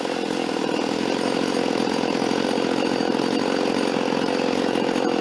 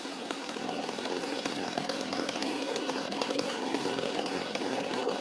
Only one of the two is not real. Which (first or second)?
second